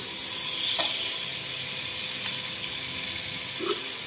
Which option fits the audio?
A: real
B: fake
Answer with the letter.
A